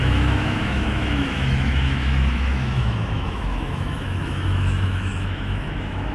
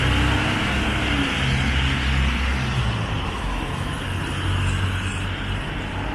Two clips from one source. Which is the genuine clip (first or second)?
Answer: second